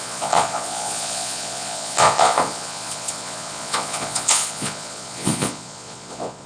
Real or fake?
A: fake